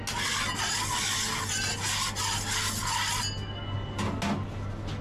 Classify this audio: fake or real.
real